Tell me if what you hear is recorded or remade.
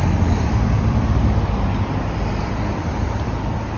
remade